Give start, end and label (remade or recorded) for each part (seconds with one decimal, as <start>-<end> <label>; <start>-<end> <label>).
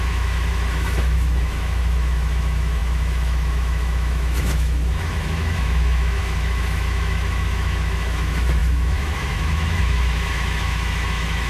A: 0.0-11.5 remade